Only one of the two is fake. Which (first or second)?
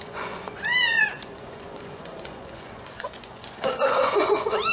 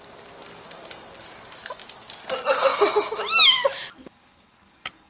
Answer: first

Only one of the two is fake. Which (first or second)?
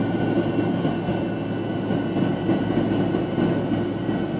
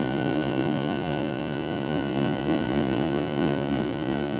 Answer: second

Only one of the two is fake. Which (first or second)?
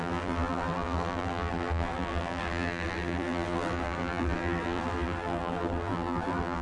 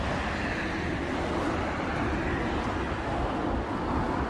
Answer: first